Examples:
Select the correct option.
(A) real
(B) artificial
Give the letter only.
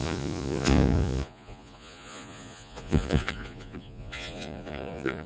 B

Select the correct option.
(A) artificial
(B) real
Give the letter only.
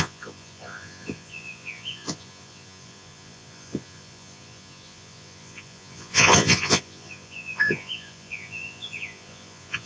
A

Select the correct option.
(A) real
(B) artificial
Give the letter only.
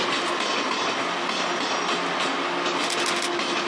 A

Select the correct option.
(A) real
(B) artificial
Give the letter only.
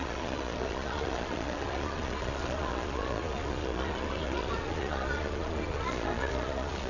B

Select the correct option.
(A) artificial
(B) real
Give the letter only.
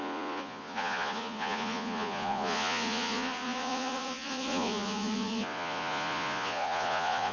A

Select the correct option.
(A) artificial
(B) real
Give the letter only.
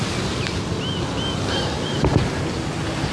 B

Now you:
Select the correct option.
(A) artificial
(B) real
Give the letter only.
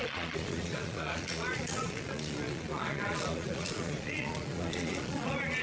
A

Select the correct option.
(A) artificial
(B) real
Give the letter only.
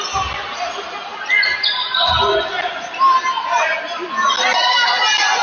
B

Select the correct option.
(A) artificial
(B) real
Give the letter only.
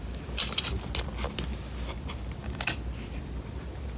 B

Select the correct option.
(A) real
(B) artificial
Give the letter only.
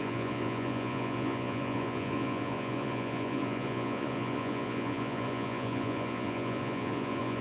B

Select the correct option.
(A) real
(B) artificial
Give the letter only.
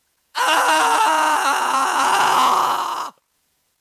B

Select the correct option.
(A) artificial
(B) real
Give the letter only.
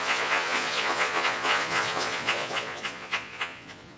A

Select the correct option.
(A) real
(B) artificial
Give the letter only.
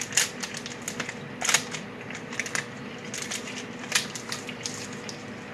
A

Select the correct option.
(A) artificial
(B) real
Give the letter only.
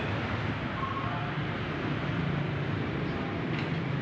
B